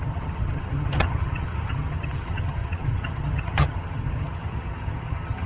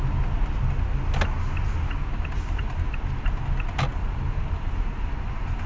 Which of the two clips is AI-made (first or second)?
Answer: first